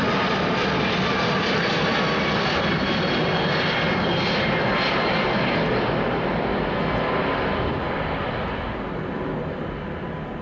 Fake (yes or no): no